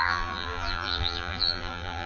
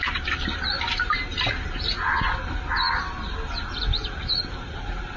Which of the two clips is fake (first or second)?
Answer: first